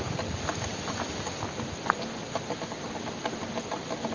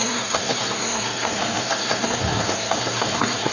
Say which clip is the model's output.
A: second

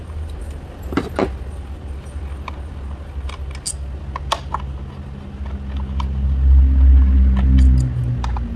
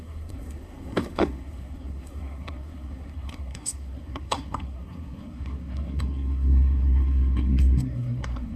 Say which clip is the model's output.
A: second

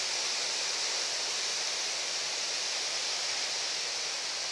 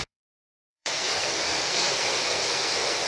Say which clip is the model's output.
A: second